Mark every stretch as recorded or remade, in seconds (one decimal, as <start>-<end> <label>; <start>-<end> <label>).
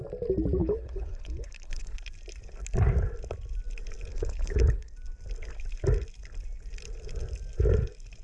0.0-0.6 recorded; 0.6-2.0 remade; 2.0-4.1 recorded; 4.1-4.9 remade; 4.9-8.2 recorded